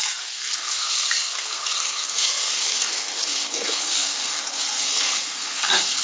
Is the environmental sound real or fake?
fake